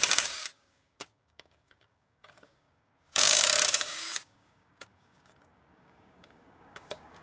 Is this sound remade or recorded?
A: remade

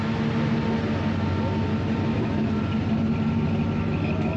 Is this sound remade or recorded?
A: recorded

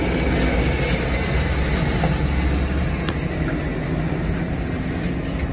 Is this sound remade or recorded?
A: recorded